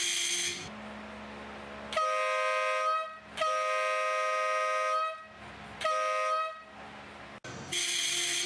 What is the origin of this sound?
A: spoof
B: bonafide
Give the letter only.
B